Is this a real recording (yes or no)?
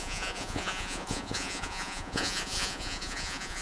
no